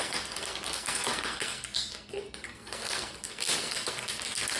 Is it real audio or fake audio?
fake